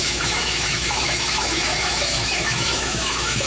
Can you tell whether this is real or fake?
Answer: fake